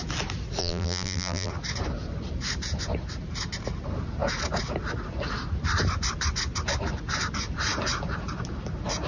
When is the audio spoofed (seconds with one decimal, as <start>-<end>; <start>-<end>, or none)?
0.6-1.5